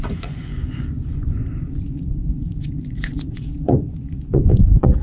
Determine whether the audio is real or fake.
fake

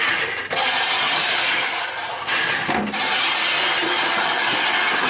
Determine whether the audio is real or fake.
real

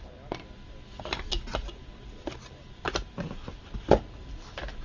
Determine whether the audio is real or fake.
real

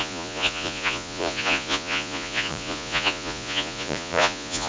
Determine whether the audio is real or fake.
fake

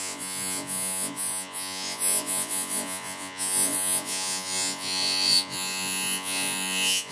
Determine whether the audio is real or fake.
fake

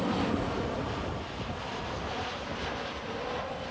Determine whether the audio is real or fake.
real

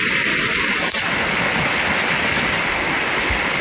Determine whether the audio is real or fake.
real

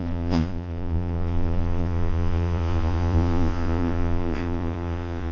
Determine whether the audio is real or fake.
fake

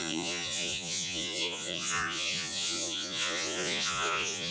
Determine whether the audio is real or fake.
fake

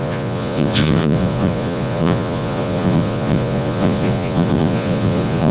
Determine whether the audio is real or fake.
fake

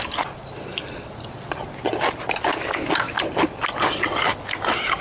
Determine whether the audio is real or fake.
real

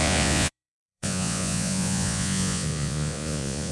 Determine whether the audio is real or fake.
fake